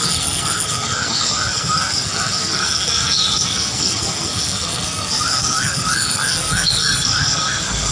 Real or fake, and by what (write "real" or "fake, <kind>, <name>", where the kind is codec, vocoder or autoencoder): fake, codec, SNAC